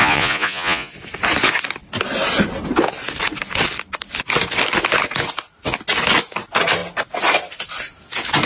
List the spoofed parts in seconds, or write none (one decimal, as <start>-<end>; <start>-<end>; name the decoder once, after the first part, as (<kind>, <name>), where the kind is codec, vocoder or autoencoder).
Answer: 0.0-0.9 (vocoder, Vocos)